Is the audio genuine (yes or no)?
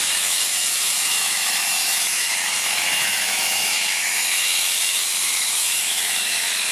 no